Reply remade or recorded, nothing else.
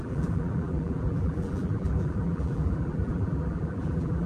remade